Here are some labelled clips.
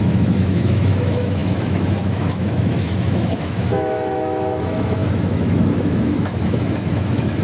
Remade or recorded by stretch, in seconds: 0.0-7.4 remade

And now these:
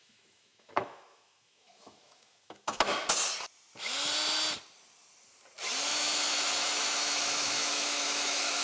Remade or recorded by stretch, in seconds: 0.0-2.9 remade; 2.9-5.9 recorded; 5.9-8.6 remade

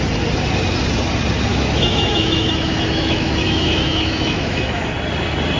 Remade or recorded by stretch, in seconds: 0.0-1.5 recorded; 1.5-4.9 remade; 4.9-5.6 recorded

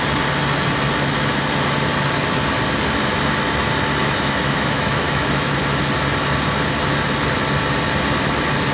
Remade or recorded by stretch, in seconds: 0.0-4.0 recorded; 4.0-5.5 remade; 5.5-8.7 recorded

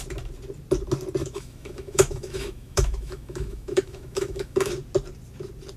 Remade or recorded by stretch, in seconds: 0.0-1.2 recorded; 1.2-4.7 remade; 4.7-5.8 recorded

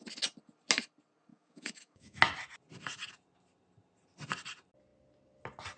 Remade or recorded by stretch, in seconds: 0.0-1.3 recorded; 1.3-2.2 remade; 2.2-5.8 recorded

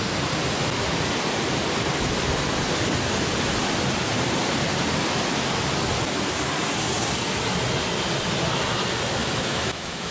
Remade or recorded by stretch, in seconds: 0.0-9.2 recorded; 9.2-10.1 remade